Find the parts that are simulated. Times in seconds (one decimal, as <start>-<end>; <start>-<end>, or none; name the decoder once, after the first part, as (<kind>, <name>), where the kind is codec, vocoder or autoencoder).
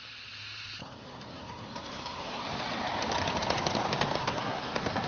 0.8-2.4 (codec, SNAC); 4.2-5.1